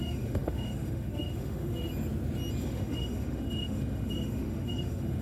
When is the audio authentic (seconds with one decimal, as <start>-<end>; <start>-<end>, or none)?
1.9-2.6